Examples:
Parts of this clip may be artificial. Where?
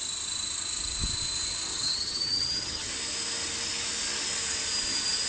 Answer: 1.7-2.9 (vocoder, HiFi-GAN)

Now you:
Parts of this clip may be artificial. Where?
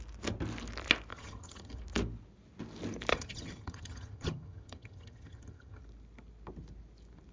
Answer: 1.1-1.8 (vocoder, HiFi-GAN); 3.1-5.8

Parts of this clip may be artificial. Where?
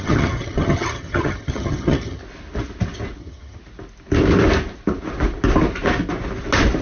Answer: 0.0-2.2 (vocoder, HiFi-GAN); 3.2-3.6